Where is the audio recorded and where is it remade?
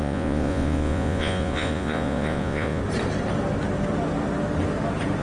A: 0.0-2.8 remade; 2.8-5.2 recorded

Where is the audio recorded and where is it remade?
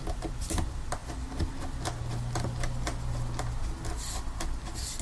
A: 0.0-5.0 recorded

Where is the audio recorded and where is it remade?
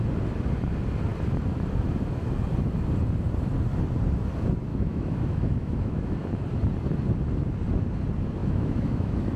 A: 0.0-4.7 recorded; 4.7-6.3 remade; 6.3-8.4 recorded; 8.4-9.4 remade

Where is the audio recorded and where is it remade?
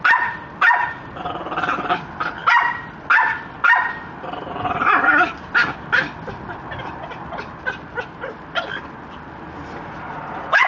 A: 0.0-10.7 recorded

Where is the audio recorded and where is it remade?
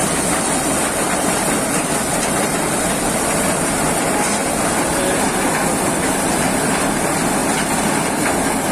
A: 0.0-0.8 recorded; 0.8-8.7 remade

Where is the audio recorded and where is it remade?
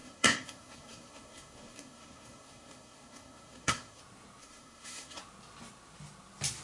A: 0.0-4.0 remade; 4.0-4.4 recorded; 4.4-5.2 remade; 5.2-6.6 recorded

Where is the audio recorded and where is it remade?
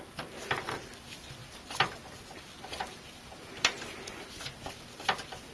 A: 0.0-5.5 recorded